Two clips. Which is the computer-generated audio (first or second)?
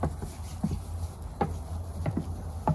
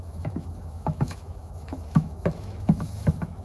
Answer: second